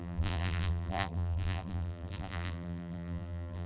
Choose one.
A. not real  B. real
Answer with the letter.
A